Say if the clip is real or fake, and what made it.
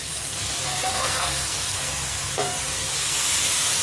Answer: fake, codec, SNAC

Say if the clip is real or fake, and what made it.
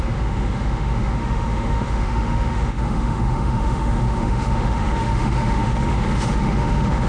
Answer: fake, autoencoder, DAC-VAE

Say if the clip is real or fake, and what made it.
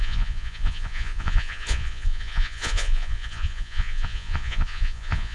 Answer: fake, vocoder, Vocos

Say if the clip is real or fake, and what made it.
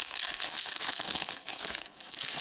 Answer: fake, codec, SNAC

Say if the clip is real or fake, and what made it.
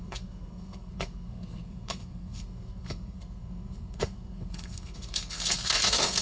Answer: fake, codec, SNAC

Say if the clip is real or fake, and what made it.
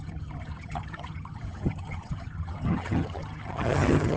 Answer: fake, vocoder, HiFi-GAN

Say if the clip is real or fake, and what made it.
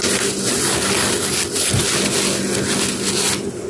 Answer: real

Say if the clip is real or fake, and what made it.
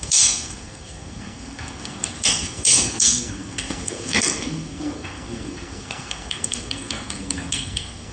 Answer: fake, codec, SNAC